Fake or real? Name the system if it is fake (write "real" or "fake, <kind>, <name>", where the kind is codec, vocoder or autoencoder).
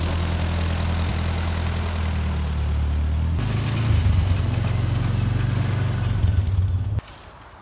real